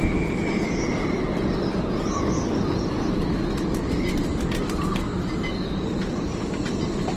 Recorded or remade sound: recorded